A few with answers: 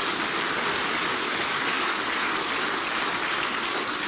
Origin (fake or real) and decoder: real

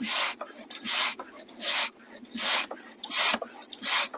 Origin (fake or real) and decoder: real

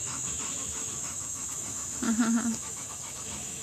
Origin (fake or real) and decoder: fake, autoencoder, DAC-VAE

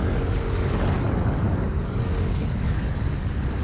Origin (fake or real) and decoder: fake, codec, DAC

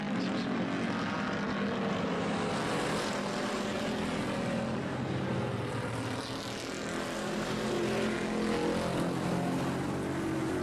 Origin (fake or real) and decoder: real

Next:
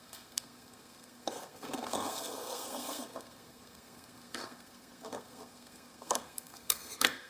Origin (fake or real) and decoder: fake, codec, SNAC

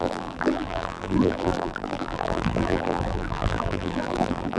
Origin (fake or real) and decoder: fake, vocoder, BigVGAN v2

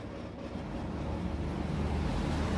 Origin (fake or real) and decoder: real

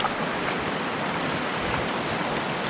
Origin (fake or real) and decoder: real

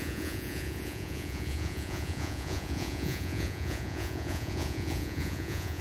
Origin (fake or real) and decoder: fake, vocoder, Vocos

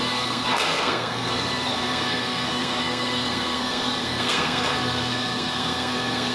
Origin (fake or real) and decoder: fake, codec, SNAC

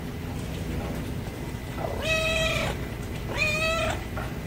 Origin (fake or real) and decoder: real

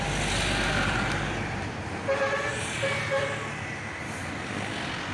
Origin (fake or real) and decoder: real